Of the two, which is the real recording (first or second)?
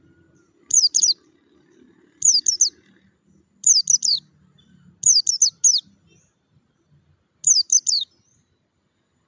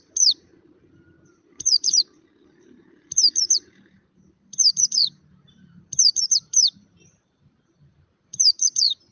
first